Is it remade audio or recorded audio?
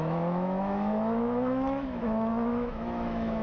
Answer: remade